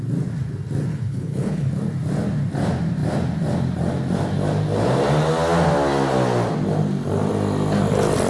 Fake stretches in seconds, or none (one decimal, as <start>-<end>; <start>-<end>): 0.9-1.7